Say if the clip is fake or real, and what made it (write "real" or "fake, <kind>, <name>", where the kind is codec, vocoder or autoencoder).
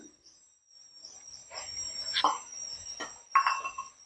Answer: real